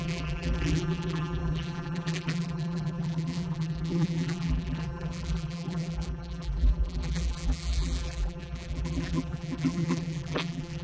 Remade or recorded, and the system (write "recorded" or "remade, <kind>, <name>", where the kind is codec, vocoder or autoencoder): remade, vocoder, BigVGAN v2